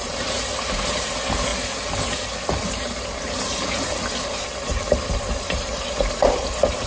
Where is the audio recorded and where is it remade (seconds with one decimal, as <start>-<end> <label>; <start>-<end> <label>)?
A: 0.0-1.5 remade; 1.5-2.8 recorded; 2.8-6.9 remade